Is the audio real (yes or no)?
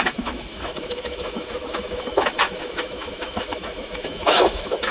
no